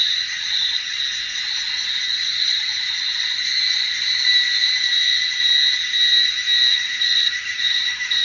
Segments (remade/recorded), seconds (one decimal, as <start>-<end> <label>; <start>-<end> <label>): 0.0-1.0 remade; 1.0-2.0 recorded; 2.0-2.7 remade; 2.7-6.7 recorded; 6.7-8.2 remade